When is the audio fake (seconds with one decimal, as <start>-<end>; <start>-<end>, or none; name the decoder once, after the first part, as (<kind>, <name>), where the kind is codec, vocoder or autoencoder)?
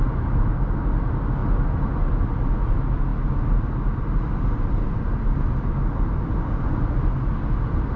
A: none